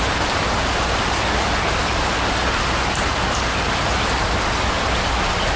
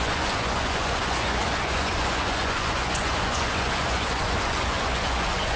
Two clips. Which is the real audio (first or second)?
first